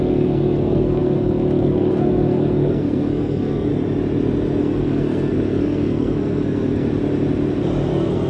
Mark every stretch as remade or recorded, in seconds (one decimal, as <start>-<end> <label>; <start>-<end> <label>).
0.0-3.7 remade; 3.7-4.6 recorded; 4.6-6.9 remade; 6.9-7.9 recorded; 7.9-8.3 remade